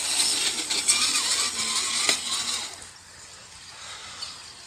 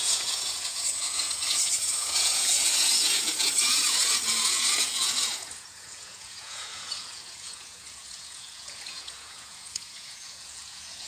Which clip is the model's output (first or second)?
second